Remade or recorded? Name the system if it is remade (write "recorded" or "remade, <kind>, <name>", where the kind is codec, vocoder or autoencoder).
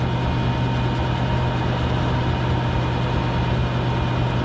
recorded